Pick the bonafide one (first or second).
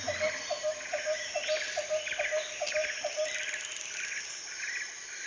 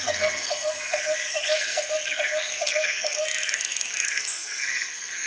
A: first